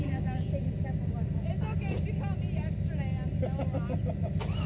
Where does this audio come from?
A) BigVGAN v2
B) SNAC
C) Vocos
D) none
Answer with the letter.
D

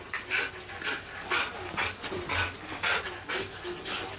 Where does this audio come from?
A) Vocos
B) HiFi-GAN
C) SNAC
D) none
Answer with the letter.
D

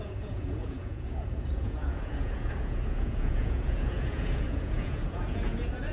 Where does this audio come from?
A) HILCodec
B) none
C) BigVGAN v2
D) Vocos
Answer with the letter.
D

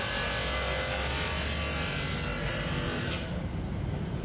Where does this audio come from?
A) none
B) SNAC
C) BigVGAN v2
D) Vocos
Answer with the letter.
A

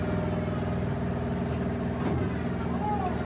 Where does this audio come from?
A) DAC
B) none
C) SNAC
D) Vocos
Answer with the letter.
B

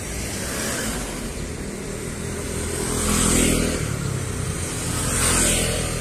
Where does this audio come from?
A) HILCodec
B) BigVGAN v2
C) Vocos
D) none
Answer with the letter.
D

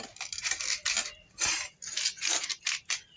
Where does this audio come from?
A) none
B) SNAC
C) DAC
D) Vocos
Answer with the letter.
A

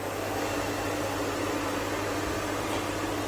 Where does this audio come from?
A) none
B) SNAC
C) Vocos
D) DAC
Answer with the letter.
A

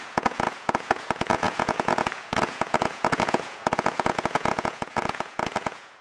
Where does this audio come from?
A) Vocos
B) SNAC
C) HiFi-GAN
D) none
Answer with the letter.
A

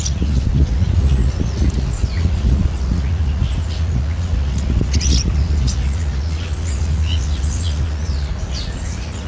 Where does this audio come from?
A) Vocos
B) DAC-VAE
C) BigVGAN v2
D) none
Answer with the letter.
A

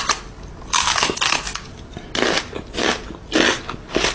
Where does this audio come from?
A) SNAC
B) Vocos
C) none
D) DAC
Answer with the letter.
C